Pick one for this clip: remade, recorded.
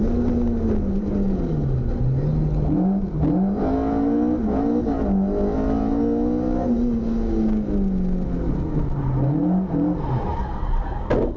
recorded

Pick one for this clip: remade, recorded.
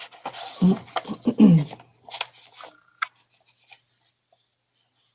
recorded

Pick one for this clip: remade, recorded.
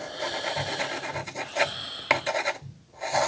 recorded